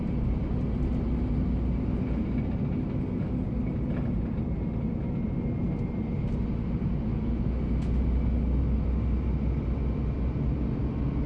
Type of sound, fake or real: real